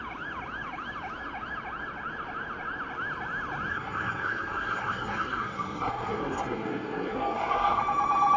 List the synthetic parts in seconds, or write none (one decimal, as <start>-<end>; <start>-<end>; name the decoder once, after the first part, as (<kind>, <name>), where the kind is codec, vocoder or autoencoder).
3.7-7.8 (codec, SNAC)